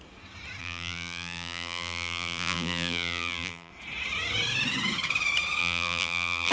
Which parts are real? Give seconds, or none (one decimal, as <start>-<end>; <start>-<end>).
0.0-0.6; 3.7-5.6